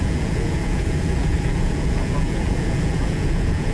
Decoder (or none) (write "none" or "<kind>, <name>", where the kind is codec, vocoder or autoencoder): vocoder, Vocos